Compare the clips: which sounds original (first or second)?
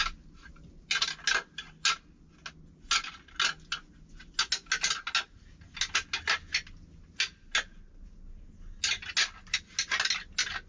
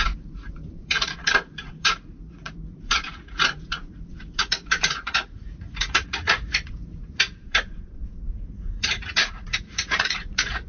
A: first